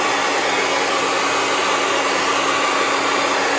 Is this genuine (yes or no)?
yes